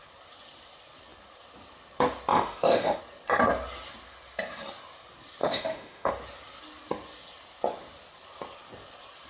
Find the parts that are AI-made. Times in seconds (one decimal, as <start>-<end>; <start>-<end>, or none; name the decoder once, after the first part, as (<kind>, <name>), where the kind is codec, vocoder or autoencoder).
2.3-3.0 (autoencoder, DAC-VAE); 5.4-6.1